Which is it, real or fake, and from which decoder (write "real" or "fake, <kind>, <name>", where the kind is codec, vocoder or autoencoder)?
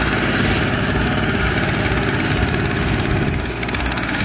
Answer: fake, vocoder, BigVGAN v2